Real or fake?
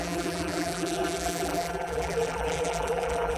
fake